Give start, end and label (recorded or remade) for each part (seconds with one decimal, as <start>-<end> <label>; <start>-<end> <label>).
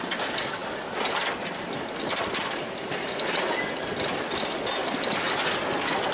0.0-6.1 recorded